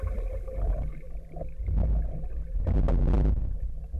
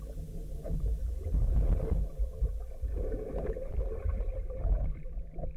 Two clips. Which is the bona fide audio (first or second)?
first